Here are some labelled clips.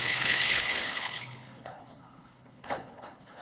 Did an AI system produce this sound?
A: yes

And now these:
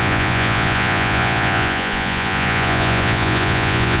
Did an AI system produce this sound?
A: yes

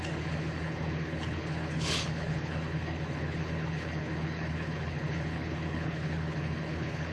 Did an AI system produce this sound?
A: yes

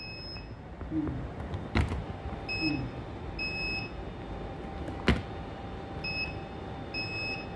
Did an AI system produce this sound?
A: no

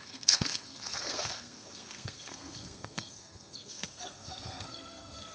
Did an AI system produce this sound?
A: yes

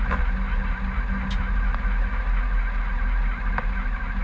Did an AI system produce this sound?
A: no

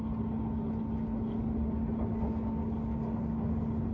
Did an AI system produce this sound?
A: no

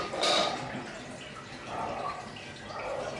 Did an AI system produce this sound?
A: no